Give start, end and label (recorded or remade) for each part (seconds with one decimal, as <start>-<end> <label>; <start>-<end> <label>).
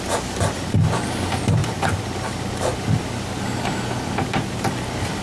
0.0-5.2 recorded